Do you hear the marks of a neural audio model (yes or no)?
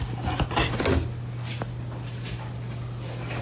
no